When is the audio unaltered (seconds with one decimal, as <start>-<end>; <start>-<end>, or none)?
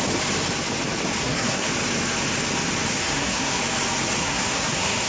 0.0-1.2; 1.7-2.9; 3.6-4.2